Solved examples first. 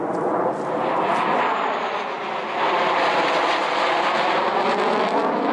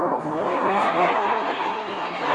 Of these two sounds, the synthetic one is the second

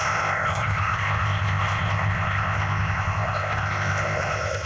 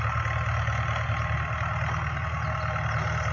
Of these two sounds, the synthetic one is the first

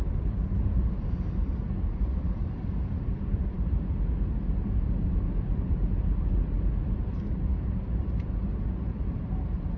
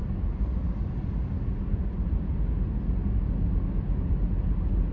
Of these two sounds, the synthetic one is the first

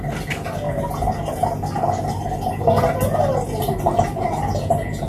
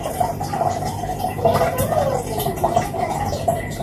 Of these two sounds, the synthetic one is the second